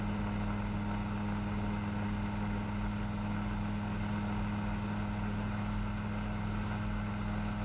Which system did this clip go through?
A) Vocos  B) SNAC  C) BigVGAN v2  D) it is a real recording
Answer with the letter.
D